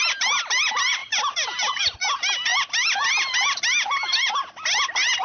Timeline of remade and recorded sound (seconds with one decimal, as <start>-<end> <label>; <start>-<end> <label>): 0.0-5.2 recorded